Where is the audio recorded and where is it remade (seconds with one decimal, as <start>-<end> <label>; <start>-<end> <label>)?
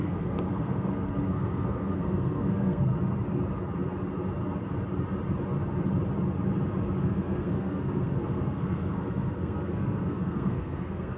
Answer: 0.0-2.9 remade; 2.9-7.0 recorded; 7.0-11.2 remade